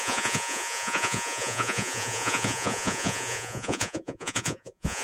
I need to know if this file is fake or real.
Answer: fake